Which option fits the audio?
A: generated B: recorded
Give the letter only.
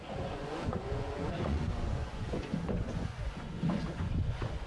A